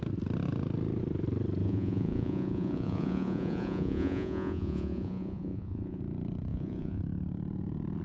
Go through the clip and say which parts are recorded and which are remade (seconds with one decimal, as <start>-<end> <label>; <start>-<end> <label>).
0.0-1.6 recorded; 1.6-6.0 remade; 6.0-6.5 recorded; 6.5-7.0 remade; 7.0-8.0 recorded